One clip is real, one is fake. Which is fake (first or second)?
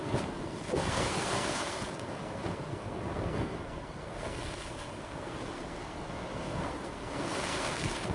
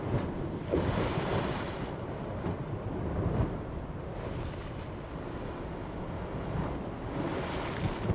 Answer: first